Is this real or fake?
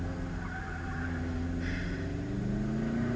real